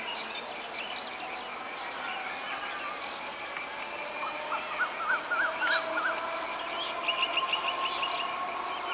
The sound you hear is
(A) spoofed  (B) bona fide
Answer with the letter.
B